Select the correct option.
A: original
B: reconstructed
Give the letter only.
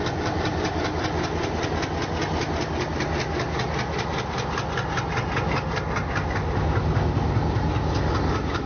A